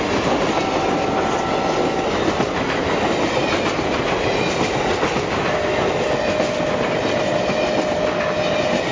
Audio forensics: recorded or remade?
recorded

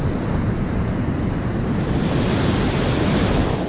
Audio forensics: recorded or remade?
recorded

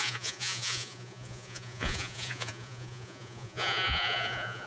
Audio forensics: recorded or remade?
remade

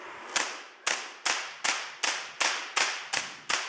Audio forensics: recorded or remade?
recorded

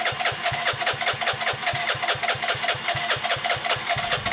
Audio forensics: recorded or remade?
recorded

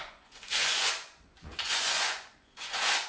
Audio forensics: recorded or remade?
remade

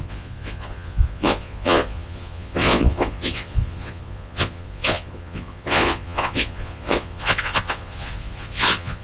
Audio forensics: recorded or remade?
remade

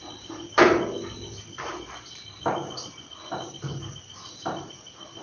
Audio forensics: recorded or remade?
recorded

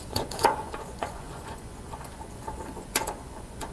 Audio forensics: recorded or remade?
remade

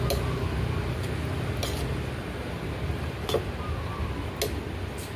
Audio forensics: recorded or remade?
recorded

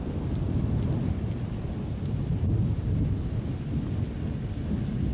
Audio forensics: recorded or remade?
recorded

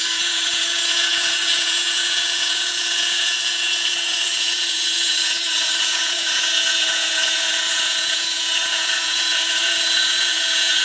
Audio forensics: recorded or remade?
remade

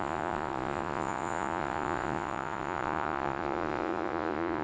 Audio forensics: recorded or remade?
remade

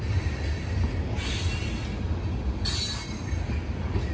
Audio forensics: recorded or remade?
recorded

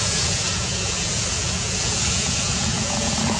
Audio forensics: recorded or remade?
remade